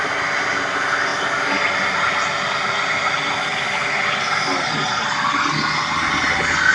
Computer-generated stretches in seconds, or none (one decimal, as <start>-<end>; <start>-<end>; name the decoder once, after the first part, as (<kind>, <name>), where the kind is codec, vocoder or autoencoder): none